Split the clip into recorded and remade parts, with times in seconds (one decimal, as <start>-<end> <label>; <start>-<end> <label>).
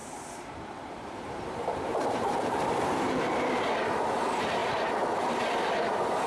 0.0-3.3 remade; 3.3-6.3 recorded